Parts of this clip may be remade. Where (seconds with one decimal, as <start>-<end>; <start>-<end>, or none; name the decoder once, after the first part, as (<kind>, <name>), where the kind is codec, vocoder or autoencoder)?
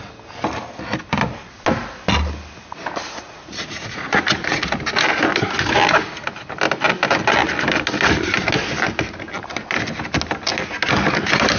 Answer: 3.0-4.7 (vocoder, Vocos)